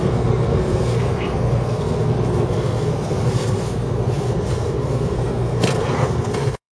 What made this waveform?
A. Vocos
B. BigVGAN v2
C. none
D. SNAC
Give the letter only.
D